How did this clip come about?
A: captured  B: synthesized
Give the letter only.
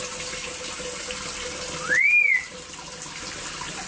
A